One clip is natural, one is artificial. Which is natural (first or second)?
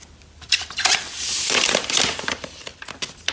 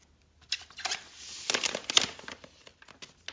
second